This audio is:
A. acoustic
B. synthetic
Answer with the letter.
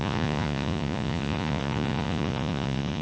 B